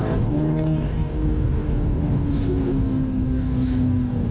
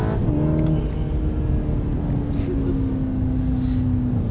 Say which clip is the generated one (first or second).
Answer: first